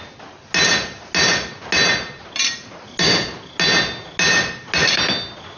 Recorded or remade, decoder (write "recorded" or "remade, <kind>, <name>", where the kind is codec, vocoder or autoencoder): recorded